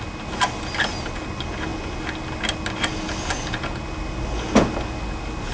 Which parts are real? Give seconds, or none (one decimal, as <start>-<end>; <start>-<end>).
0.0-5.5